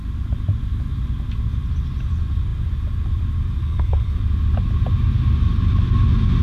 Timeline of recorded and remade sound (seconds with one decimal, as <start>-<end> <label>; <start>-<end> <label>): 0.0-3.6 recorded; 3.6-4.2 remade; 4.2-6.4 recorded